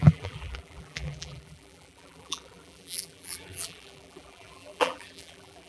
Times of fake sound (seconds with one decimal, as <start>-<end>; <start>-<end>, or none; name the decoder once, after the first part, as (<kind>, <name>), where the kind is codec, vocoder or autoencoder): 0.0-5.7 (vocoder, BigVGAN v2)